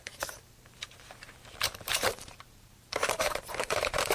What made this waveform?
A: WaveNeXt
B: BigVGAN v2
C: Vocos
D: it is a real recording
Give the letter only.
B